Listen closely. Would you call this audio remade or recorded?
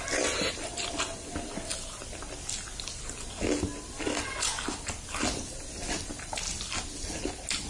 recorded